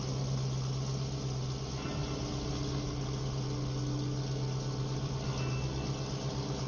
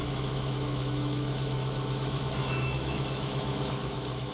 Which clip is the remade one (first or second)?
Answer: second